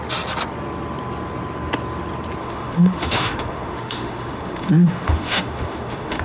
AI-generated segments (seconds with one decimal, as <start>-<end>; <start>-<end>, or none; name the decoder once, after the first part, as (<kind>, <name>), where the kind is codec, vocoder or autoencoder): 2.4-6.2 (autoencoder, DAC-VAE)